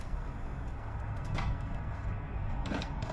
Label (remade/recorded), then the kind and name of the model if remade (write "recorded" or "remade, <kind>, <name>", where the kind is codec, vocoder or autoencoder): remade, codec, SNAC